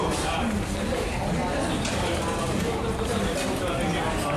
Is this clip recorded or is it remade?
recorded